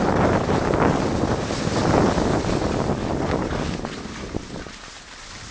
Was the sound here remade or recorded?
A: recorded